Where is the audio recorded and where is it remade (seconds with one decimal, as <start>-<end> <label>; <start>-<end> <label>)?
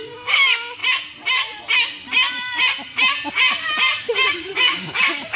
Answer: 0.0-0.8 remade; 0.8-4.0 recorded; 4.0-5.4 remade